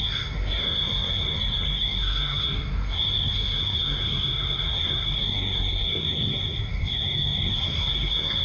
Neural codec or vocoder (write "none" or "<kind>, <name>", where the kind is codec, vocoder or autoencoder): codec, SNAC